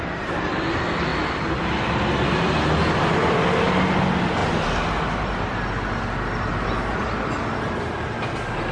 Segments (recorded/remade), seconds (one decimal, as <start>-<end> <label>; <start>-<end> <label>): 0.0-8.7 recorded